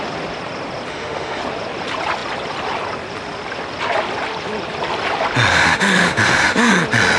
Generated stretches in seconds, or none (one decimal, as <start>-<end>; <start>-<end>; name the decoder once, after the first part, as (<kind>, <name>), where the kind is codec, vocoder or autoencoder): 0.9-1.4 (autoencoder, DAC-VAE); 5.5-6.7